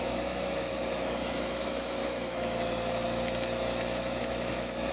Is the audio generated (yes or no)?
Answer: yes